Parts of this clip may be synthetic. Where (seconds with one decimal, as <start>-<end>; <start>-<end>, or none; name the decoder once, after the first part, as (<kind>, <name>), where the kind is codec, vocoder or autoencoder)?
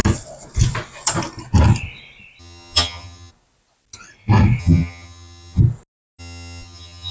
2.4-3.3 (vocoder, HiFi-GAN); 4.6-5.6; 6.2-7.1